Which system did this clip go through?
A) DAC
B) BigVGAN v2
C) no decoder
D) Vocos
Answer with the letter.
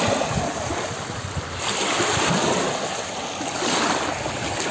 C